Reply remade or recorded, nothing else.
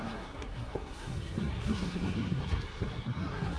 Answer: remade